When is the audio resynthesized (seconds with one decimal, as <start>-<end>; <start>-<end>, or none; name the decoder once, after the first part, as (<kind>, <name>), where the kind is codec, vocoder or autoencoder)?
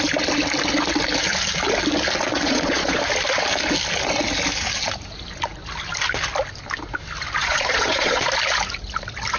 2.3-3.0 (vocoder, Vocos); 7.4-8.3